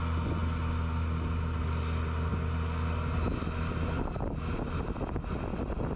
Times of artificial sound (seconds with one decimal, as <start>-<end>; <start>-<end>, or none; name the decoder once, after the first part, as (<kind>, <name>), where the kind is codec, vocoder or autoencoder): none